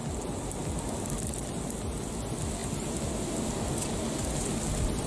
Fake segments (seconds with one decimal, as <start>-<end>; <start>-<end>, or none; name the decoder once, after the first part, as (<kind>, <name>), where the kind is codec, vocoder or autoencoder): none